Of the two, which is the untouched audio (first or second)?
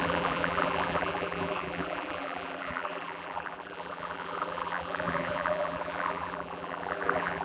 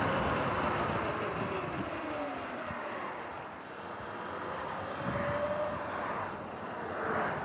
second